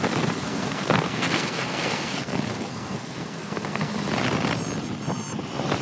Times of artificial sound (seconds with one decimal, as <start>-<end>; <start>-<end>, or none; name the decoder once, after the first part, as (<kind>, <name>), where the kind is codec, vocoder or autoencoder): 0.4-3.9 (codec, SNAC)